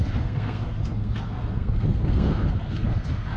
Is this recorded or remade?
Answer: remade